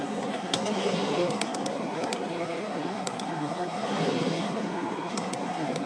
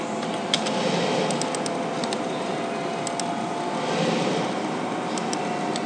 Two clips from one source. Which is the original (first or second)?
second